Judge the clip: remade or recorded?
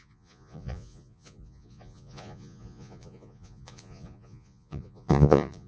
remade